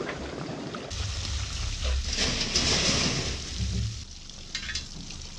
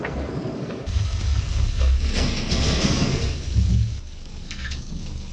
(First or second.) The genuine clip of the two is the first